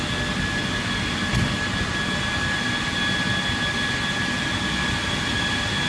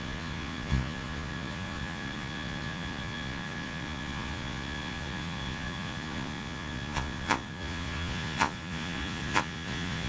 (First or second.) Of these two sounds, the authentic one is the first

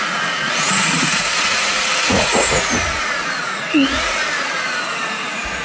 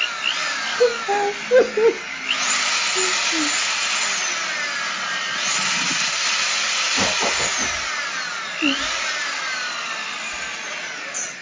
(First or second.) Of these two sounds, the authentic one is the second